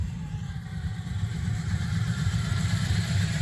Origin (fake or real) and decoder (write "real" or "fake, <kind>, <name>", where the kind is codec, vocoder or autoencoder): fake, vocoder, BigVGAN v2